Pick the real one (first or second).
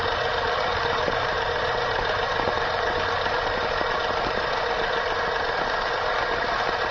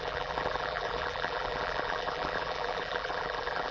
first